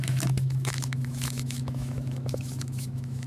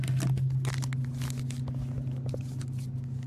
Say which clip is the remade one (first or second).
first